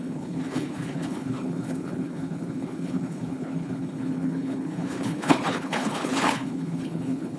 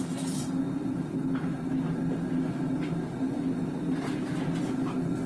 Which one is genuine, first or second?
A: second